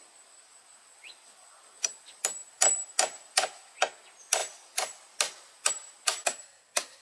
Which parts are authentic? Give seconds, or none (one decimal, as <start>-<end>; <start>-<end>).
0.0-1.0; 3.6-4.4; 5.7-7.0